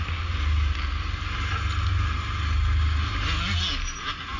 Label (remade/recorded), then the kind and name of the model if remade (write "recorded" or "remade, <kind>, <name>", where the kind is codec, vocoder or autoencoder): recorded